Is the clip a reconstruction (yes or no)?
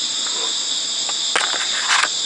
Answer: no